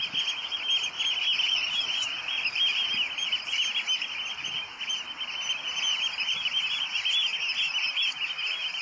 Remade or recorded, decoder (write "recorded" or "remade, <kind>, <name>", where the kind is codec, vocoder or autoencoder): recorded